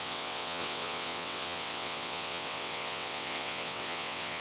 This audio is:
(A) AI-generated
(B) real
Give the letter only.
A